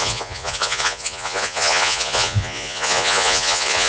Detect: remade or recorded remade